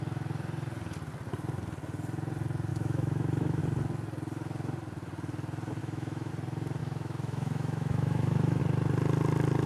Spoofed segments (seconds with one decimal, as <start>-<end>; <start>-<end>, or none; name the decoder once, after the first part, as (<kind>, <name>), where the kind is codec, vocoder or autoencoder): 2.7-3.6 (autoencoder, DAC-VAE); 5.8-6.3; 6.8-8.6